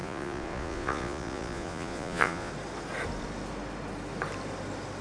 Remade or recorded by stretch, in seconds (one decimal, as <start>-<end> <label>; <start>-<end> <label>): 0.0-2.5 remade; 2.5-5.0 recorded